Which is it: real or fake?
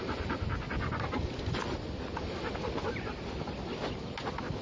real